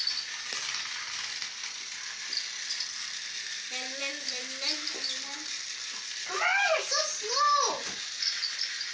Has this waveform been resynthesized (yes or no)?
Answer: no